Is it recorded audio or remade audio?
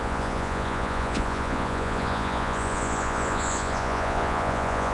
remade